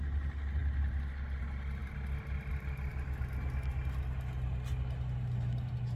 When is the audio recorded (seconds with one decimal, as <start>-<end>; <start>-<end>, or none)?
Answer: 0.0-6.0